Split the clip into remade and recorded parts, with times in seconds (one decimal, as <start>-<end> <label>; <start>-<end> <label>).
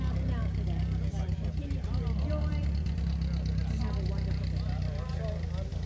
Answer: 0.0-5.9 recorded